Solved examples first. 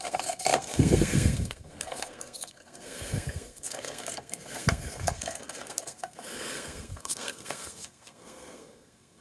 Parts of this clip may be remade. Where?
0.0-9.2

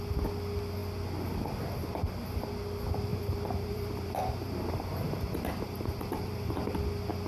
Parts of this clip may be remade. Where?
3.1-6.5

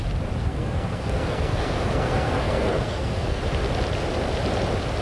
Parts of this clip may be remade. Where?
0.4-3.4

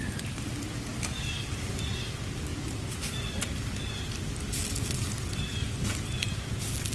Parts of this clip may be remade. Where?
none

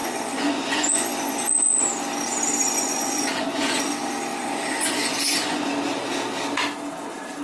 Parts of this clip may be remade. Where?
0.0-1.8; 2.6-3.9; 4.3-5.7

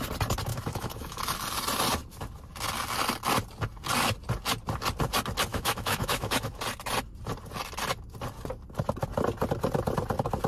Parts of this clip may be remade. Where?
0.5-1.2; 5.5-6.6

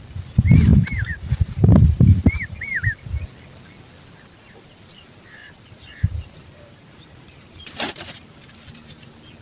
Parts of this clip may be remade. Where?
0.7-2.3; 5.4-8.4

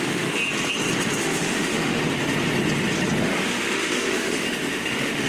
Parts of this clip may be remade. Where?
0.0-0.4; 1.2-2.0; 3.2-5.3